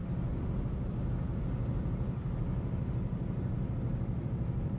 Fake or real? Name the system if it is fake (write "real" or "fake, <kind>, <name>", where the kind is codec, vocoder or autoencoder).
real